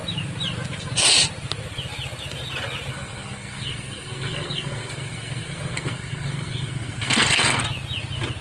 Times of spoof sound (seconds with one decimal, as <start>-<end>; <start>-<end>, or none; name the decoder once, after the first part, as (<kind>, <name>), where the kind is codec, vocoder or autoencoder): 2.9-7.6 (codec, SNAC)